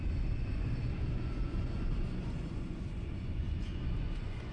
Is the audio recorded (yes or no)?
no